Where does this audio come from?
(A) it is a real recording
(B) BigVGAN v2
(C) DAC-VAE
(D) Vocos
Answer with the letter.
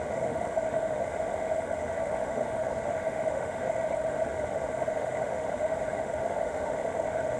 C